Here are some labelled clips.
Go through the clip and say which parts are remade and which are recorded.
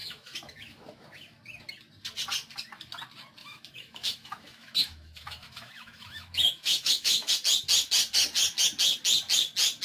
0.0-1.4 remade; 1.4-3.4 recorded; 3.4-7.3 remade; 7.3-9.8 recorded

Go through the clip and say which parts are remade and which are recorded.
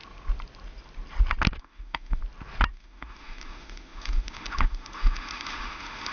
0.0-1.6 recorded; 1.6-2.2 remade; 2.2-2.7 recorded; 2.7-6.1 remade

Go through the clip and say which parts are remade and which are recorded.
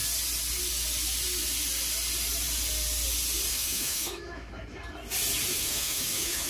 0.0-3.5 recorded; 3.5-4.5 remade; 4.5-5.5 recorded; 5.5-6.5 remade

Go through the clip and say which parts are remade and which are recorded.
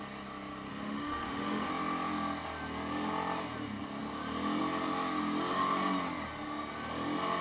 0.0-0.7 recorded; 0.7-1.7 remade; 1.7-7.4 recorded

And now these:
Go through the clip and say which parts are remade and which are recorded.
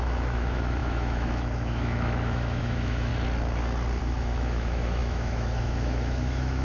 0.0-3.1 remade; 3.1-4.0 recorded; 4.0-6.6 remade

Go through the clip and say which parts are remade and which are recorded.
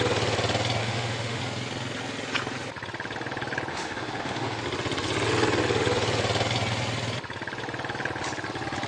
0.0-0.8 recorded; 0.8-1.4 remade; 1.4-3.7 recorded; 3.7-4.6 remade; 4.6-8.9 recorded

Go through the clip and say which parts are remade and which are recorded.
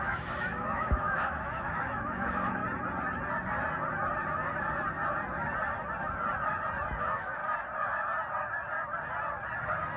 0.0-2.6 remade; 2.6-7.0 recorded; 7.0-7.4 remade; 7.4-10.0 recorded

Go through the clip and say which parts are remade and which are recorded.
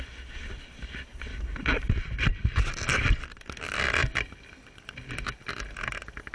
0.0-6.3 recorded